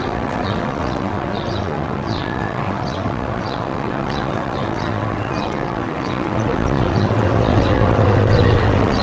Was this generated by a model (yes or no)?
yes